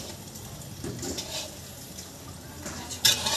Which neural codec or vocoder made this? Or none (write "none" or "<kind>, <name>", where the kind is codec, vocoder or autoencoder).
none